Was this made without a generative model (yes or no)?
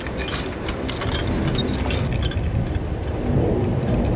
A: yes